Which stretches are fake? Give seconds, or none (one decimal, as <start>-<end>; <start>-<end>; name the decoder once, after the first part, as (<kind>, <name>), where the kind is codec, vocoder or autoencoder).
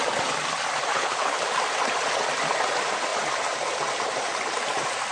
0.9-1.4 (codec, HILCodec)